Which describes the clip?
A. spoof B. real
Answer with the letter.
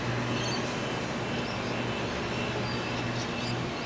B